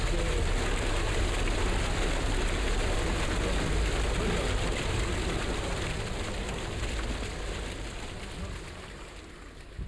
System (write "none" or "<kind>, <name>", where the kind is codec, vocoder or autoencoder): none